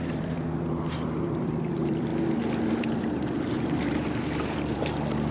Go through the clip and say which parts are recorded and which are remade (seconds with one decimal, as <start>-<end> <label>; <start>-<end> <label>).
0.0-2.1 remade; 2.1-2.7 recorded; 2.7-5.3 remade